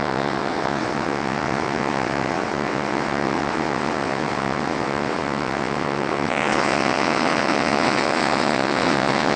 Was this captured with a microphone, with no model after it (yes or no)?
no